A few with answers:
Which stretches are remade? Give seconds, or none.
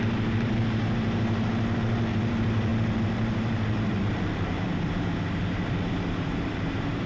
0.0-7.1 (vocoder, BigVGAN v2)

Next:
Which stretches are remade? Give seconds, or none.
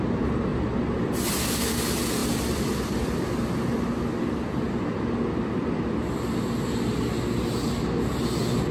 2.2-6.8 (vocoder, BigVGAN v2)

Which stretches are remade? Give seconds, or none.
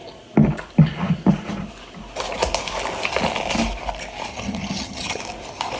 4.3-5.2 (vocoder, HiFi-GAN)